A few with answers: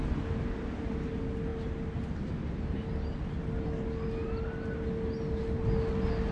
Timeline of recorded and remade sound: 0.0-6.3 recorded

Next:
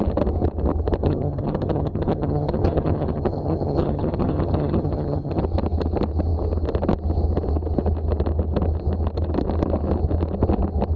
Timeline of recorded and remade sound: 0.0-1.0 recorded; 1.0-5.4 remade; 5.4-11.0 recorded

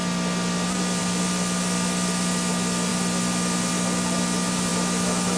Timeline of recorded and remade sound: 0.0-5.4 recorded

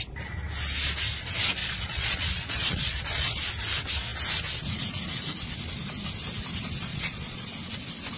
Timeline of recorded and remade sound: 0.0-1.6 recorded; 1.6-3.5 remade; 3.5-6.9 recorded; 6.9-7.5 remade; 7.5-8.2 recorded